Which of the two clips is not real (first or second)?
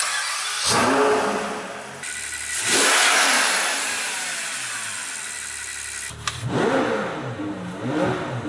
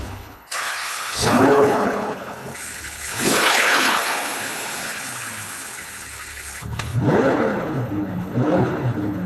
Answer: second